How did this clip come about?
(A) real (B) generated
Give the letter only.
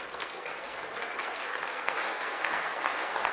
B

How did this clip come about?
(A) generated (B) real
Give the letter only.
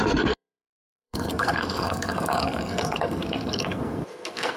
A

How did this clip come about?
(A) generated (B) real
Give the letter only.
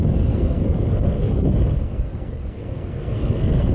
A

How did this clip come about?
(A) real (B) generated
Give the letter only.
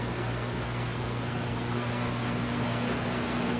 B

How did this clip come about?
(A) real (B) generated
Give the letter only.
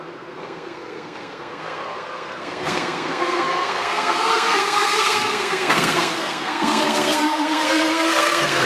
B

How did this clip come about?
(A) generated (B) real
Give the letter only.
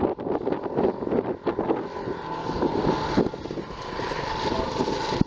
B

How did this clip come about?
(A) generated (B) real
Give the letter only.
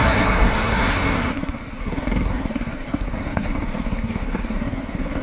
A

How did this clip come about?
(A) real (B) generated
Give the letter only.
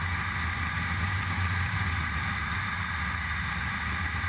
A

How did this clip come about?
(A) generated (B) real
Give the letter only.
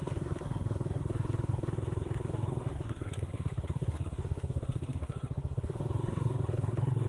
A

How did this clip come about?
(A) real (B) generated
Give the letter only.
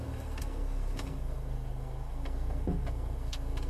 B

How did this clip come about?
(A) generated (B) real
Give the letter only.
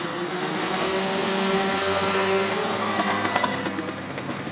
A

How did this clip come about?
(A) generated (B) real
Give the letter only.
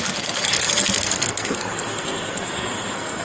A